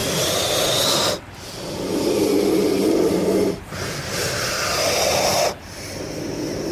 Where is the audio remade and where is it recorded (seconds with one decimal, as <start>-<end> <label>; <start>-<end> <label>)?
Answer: 0.0-6.7 recorded